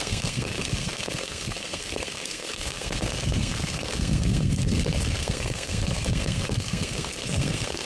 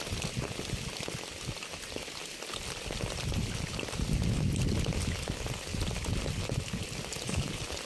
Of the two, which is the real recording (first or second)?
second